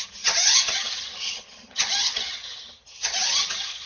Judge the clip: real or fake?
fake